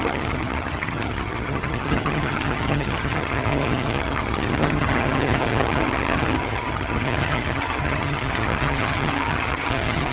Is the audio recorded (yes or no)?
no